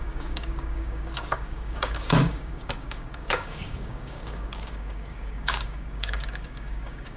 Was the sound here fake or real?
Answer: fake